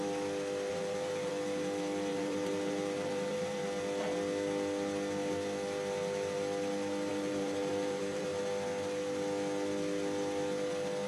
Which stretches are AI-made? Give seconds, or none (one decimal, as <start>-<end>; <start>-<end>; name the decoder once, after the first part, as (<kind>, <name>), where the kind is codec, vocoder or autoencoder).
0.7-1.3 (vocoder, BigVGAN v2); 2.1-3.6; 7.1-8.4